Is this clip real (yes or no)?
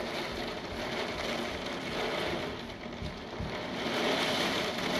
yes